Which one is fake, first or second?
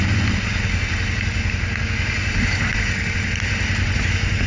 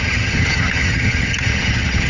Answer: second